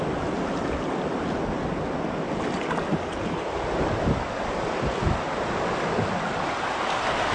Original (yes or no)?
yes